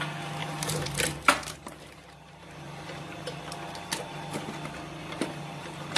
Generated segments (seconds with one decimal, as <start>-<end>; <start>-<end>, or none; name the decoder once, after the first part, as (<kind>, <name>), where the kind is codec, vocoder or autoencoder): 0.4-3.4 (vocoder, BigVGAN v2); 5.0-6.0